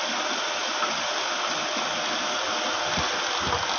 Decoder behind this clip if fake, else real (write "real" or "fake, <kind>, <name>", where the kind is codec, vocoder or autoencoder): real